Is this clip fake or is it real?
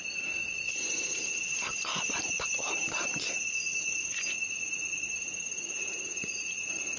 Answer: real